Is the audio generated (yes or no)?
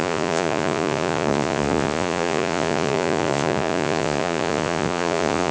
yes